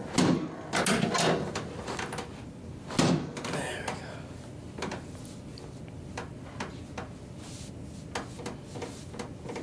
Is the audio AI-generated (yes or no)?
no